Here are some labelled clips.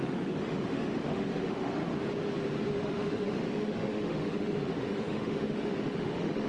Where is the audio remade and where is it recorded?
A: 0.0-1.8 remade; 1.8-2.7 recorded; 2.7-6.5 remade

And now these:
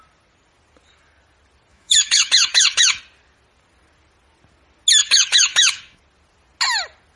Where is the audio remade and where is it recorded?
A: 0.0-1.7 recorded; 1.7-3.0 remade; 3.0-5.0 recorded; 5.0-6.0 remade; 6.0-7.2 recorded

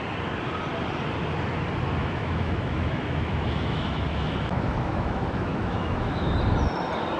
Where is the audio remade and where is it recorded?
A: 0.0-2.0 recorded; 2.0-6.3 remade; 6.3-7.2 recorded

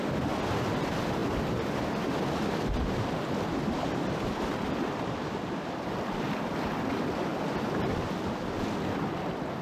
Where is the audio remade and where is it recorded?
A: 0.0-9.6 recorded

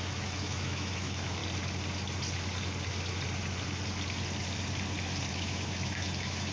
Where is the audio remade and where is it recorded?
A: 0.0-1.4 remade; 1.4-5.3 recorded; 5.3-6.5 remade

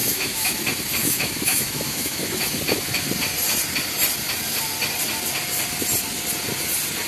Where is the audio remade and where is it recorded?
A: 0.0-0.6 remade; 0.6-1.0 recorded; 1.0-2.6 remade; 2.6-7.1 recorded

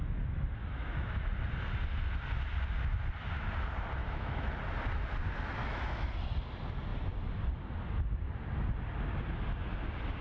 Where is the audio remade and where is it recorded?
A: 0.0-0.6 recorded; 0.6-1.2 remade; 1.2-4.0 recorded; 4.0-4.5 remade; 4.5-5.6 recorded; 5.6-6.1 remade; 6.1-10.2 recorded

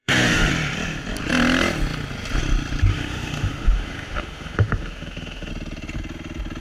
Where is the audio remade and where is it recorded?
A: 0.0-0.5 remade; 0.5-2.9 recorded; 2.9-5.5 remade; 5.5-6.6 recorded